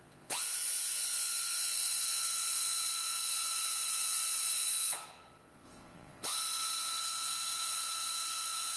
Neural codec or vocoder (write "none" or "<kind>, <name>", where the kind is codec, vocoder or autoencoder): vocoder, Vocos